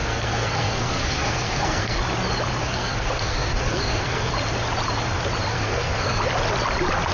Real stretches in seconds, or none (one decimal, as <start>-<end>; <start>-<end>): 2.0-2.6; 4.3-5.5; 6.2-7.1